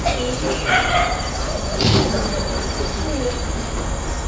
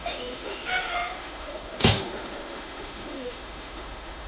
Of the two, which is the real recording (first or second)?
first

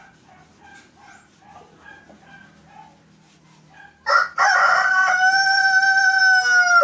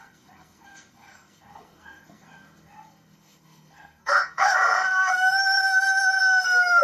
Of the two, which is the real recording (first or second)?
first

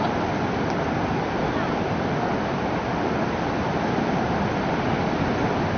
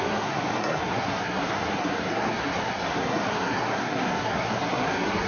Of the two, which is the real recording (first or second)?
first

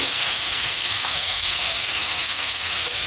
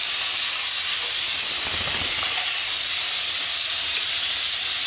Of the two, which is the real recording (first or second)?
second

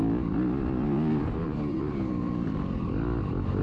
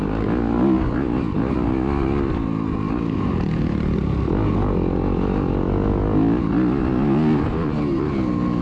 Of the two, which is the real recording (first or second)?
second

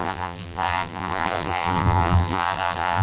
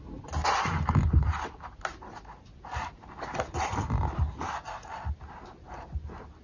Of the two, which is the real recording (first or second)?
second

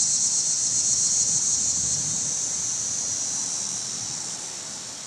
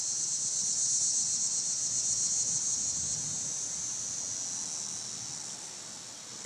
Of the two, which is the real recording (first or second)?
second